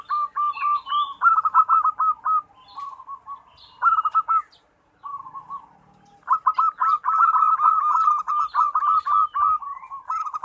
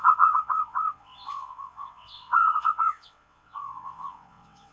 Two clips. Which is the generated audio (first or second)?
second